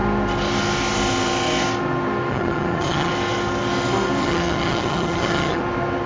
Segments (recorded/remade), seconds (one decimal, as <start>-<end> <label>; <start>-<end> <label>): 0.0-2.3 recorded; 2.3-3.1 remade; 3.1-4.2 recorded; 4.2-5.6 remade; 5.6-6.1 recorded